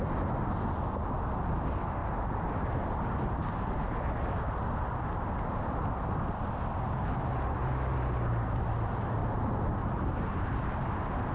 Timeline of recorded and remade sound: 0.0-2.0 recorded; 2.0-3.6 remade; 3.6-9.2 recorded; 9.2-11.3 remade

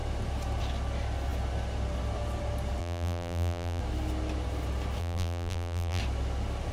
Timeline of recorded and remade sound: 0.0-2.8 recorded; 2.8-3.8 remade; 3.8-5.0 recorded; 5.0-6.0 remade; 6.0-6.7 recorded

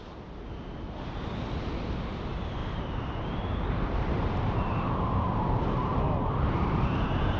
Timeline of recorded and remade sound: 0.0-2.6 recorded; 2.6-7.0 remade; 7.0-7.4 recorded

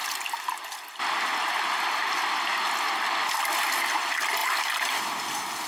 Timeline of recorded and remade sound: 0.0-5.7 recorded

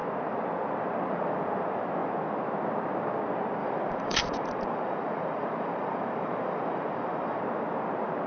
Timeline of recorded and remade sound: 0.0-3.6 recorded; 3.6-7.4 remade; 7.4-8.3 recorded